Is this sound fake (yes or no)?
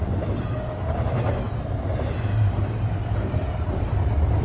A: no